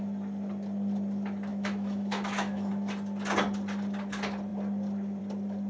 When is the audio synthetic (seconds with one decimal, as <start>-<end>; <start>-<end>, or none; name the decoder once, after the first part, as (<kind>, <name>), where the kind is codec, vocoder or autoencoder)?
1.5-2.7 (autoencoder, DAC-VAE)